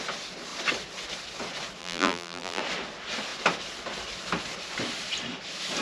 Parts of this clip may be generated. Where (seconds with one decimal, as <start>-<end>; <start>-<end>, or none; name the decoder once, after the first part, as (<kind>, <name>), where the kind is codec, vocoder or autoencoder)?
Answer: 1.8-2.6 (vocoder, BigVGAN v2)